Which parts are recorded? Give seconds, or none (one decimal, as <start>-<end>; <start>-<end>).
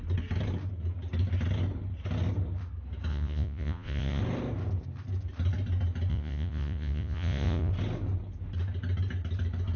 0.0-3.1; 4.2-6.1; 7.7-9.8